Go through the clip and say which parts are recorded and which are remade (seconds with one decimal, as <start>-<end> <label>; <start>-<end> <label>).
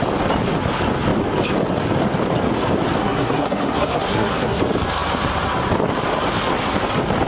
0.0-3.0 recorded; 3.0-4.6 remade; 4.6-7.3 recorded